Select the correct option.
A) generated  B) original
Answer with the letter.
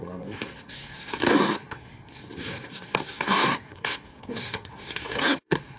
A